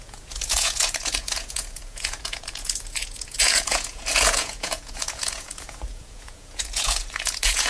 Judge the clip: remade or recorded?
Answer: remade